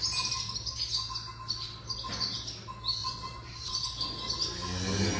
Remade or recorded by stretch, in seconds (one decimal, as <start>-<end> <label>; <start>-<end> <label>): 0.0-3.0 recorded; 3.0-3.8 remade; 3.8-5.2 recorded